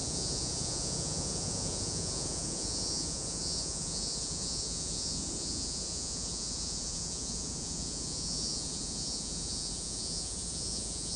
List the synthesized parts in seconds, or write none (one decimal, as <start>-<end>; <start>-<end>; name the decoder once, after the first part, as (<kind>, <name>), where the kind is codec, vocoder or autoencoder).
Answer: 0.0-11.2 (vocoder, Vocos)